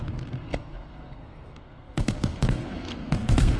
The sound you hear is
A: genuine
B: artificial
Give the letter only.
B